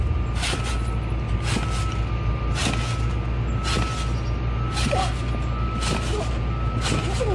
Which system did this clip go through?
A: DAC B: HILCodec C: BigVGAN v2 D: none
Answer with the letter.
D